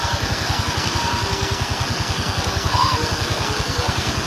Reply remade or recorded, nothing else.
remade